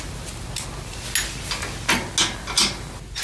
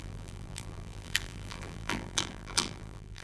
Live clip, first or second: first